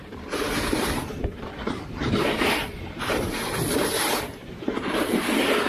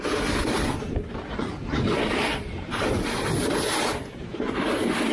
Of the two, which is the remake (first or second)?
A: first